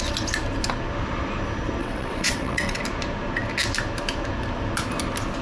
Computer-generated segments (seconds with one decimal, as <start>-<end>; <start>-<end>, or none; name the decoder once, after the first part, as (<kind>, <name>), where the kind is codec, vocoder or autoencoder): 1.8-2.8 (vocoder, WaveNeXt)